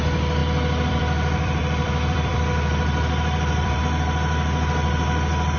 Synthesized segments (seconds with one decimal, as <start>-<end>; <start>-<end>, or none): 0.4-3.8